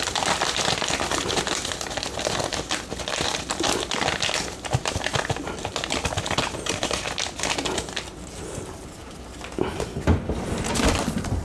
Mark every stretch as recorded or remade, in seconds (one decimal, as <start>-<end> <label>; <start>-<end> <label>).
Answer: 0.0-11.4 recorded

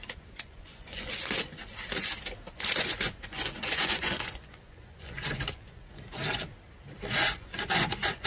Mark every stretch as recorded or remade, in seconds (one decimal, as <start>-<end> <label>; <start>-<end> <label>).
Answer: 0.0-1.6 remade; 1.6-2.5 recorded; 2.5-6.2 remade; 6.2-7.1 recorded; 7.1-8.3 remade

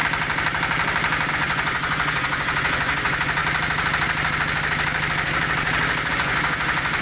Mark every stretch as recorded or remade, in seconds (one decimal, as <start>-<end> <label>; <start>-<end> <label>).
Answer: 0.0-1.3 recorded; 1.3-3.4 remade; 3.4-6.1 recorded; 6.1-7.0 remade

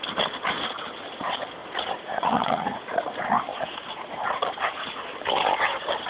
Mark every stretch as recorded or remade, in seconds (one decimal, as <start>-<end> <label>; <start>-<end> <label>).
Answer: 0.0-1.6 recorded; 1.6-2.8 remade; 2.8-3.5 recorded; 3.5-4.5 remade; 4.5-6.1 recorded

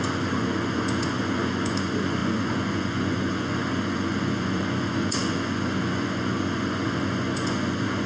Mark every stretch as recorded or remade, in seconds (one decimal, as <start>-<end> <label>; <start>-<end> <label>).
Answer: 0.0-8.1 remade